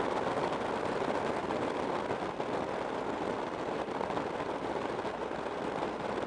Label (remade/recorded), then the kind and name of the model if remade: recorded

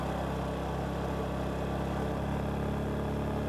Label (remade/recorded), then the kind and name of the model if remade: recorded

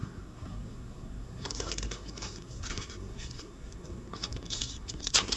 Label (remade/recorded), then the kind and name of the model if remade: remade, codec, SNAC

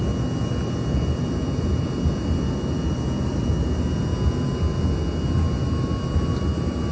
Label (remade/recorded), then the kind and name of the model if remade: recorded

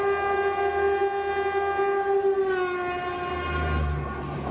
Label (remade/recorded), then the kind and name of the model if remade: recorded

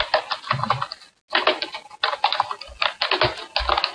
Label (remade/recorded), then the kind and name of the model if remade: recorded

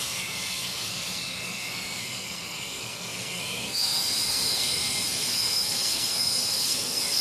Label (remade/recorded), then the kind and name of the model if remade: remade, codec, SNAC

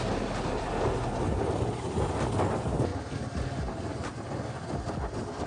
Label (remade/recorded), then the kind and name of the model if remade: recorded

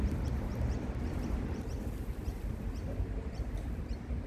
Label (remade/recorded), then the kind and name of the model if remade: recorded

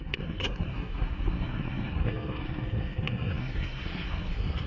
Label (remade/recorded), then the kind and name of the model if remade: remade, codec, SNAC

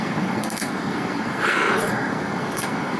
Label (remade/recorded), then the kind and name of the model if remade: remade, codec, SNAC